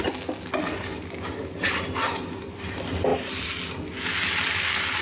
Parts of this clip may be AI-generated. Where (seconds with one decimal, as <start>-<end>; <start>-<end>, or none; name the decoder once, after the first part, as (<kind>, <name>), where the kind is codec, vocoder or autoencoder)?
1.4-2.6 (vocoder, BigVGAN v2)